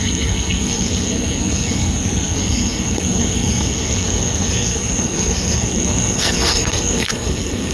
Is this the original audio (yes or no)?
no